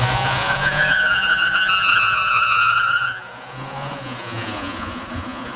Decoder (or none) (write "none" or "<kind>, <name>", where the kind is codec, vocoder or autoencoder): vocoder, Vocos